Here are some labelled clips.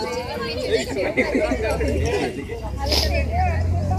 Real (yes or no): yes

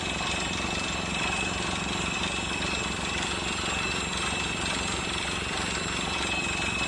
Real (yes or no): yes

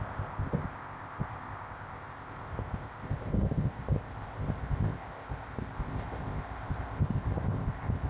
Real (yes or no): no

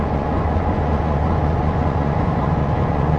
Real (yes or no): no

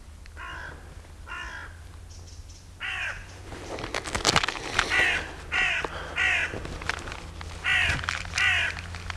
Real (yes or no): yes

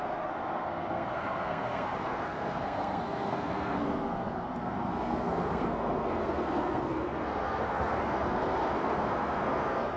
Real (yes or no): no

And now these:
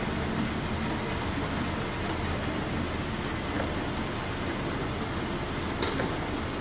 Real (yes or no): yes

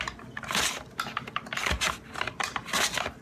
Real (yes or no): yes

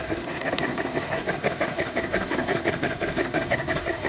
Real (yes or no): no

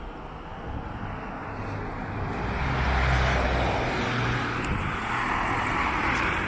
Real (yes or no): yes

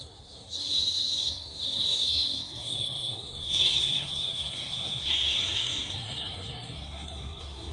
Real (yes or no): no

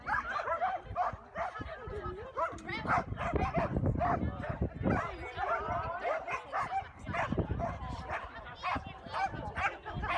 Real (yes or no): no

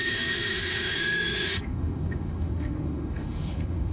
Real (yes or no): no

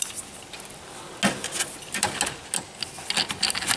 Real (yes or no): yes